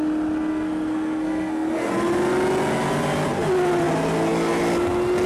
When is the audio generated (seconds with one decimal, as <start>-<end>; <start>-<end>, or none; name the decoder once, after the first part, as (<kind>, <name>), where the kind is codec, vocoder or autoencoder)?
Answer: 0.5-1.9 (codec, SNAC)